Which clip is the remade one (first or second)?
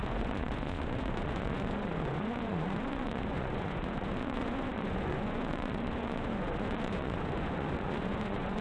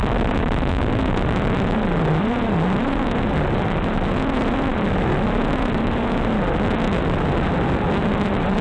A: first